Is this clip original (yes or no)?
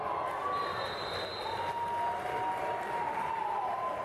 yes